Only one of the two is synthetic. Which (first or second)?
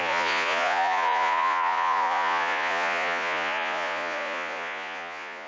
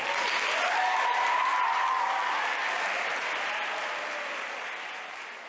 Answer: first